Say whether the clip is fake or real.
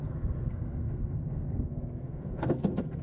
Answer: fake